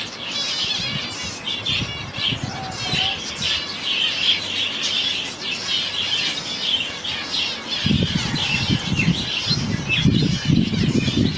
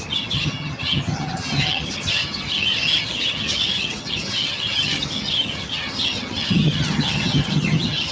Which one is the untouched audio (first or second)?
first